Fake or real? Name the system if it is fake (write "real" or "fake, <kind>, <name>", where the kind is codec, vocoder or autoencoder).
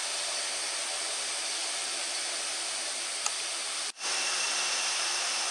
real